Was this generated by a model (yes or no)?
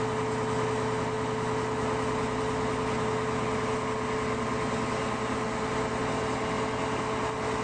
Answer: no